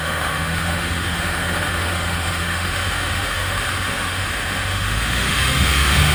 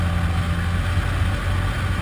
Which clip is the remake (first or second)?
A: first